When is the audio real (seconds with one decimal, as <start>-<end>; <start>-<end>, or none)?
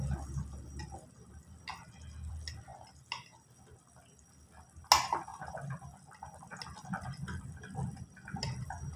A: 0.0-9.0